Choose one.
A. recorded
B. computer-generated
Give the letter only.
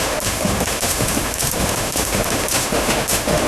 B